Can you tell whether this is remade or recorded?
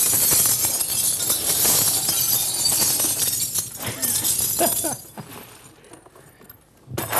recorded